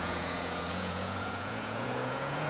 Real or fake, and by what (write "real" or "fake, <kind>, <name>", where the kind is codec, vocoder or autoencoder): fake, vocoder, Vocos